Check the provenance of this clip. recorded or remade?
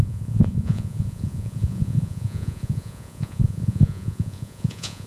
remade